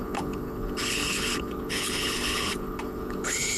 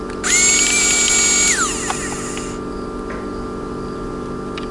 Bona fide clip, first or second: second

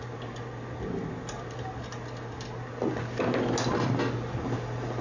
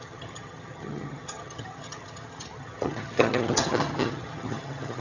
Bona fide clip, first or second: first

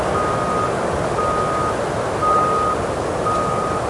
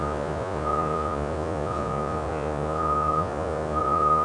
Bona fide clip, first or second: first